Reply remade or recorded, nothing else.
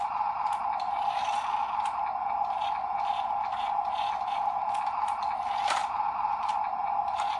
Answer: recorded